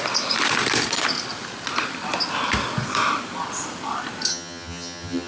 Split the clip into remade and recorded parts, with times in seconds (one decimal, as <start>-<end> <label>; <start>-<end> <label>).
0.0-4.3 recorded; 4.3-5.3 remade